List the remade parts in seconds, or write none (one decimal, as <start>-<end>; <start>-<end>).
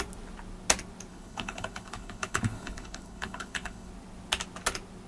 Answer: 1.1-3.9